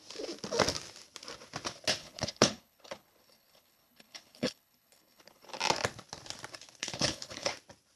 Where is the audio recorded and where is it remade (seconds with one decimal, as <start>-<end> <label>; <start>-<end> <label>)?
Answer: 0.0-2.0 recorded; 2.0-5.6 remade; 5.6-6.8 recorded; 6.8-7.5 remade; 7.5-8.0 recorded

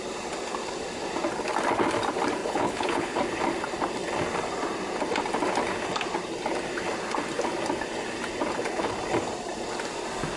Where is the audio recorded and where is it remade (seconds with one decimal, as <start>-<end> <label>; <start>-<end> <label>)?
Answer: 0.0-2.4 recorded; 2.4-3.2 remade; 3.2-10.4 recorded

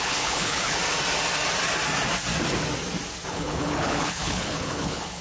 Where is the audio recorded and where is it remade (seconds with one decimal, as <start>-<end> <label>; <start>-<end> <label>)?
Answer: 0.0-0.8 remade; 0.8-3.3 recorded; 3.3-5.2 remade

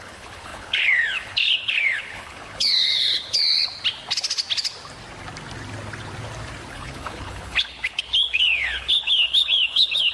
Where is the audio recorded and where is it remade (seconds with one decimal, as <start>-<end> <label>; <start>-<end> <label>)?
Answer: 0.0-3.4 remade; 3.4-6.7 recorded; 6.7-10.1 remade

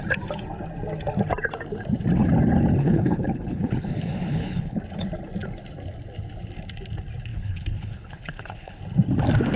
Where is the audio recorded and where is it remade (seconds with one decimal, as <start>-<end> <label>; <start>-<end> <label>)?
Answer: 0.0-2.8 recorded; 2.8-4.8 remade; 4.8-7.3 recorded; 7.3-8.8 remade; 8.8-9.6 recorded

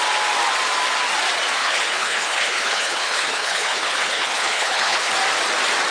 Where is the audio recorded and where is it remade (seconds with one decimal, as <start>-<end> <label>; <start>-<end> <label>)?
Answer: 0.0-1.6 recorded; 1.6-5.1 remade; 5.1-5.9 recorded